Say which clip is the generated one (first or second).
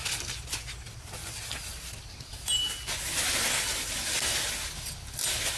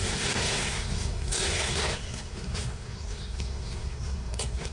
second